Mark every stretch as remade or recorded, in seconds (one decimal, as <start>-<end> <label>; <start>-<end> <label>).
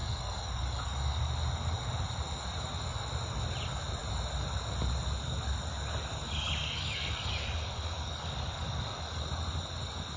0.0-1.2 remade; 1.2-6.6 recorded; 6.6-9.2 remade; 9.2-10.2 recorded